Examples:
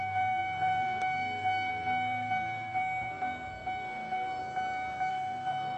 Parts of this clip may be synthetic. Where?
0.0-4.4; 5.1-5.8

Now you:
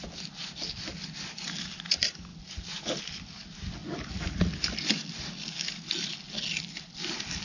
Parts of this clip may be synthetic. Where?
none

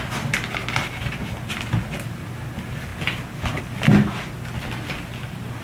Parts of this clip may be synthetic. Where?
none

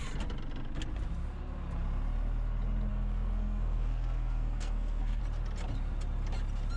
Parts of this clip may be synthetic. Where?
2.9-5.2

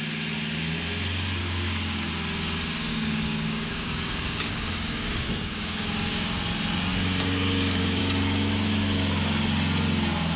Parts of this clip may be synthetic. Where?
1.4-2.1; 2.9-6.4; 6.9-8.0